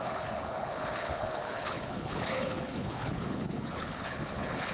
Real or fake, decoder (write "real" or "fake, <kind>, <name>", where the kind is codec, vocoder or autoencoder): fake, codec, HILCodec